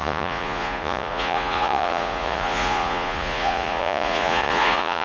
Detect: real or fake fake